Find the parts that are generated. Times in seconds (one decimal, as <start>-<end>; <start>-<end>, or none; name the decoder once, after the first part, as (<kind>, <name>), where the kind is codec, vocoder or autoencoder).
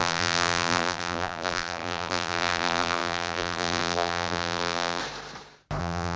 0.0-5.0 (vocoder, BigVGAN v2); 5.8-6.2